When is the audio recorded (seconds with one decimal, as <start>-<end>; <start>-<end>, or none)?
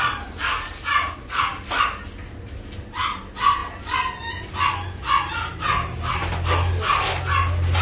0.0-7.8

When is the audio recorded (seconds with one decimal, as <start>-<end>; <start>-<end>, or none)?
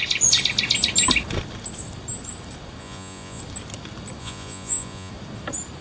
0.0-2.8; 3.4-4.2; 5.1-5.8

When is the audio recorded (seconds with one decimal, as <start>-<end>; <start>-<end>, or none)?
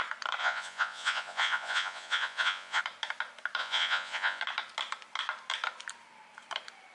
0.0-0.4; 2.8-3.6; 4.4-6.9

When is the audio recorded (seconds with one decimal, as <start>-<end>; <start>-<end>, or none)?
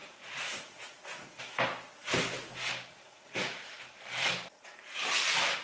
1.4-2.9; 3.7-5.6